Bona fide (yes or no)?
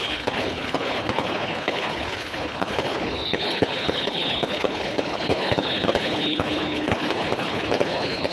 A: no